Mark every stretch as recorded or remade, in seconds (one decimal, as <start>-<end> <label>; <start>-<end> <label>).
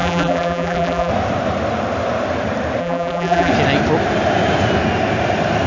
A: 0.0-1.1 remade; 1.1-2.8 recorded; 2.8-3.5 remade; 3.5-5.7 recorded